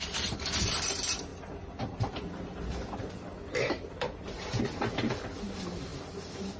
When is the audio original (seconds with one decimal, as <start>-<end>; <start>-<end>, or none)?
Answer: 0.0-6.6